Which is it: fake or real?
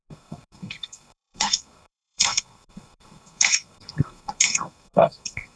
fake